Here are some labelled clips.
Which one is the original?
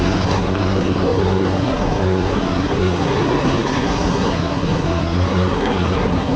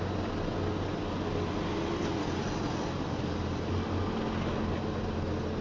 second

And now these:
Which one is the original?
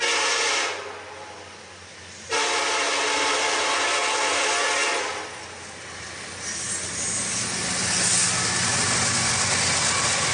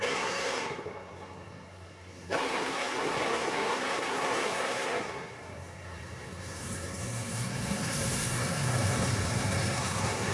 first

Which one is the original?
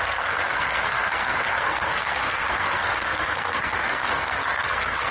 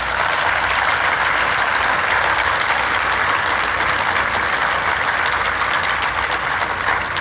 second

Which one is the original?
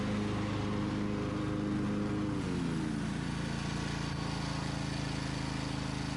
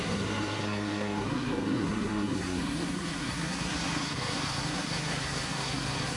first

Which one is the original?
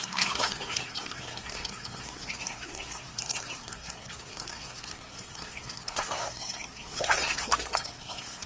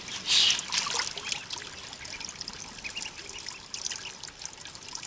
second